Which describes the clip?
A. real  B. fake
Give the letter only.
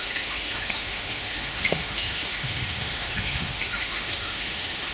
B